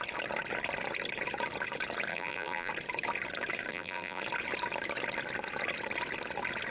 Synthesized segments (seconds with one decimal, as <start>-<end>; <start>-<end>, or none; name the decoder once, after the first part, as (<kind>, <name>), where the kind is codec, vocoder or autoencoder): 2.1-2.7 (vocoder, BigVGAN v2); 3.7-4.2